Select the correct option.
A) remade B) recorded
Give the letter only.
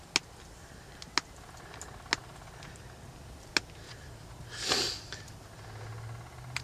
B